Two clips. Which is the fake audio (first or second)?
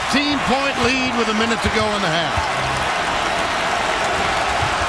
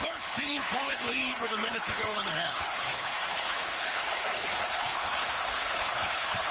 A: second